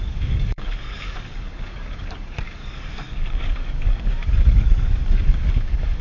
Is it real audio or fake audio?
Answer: fake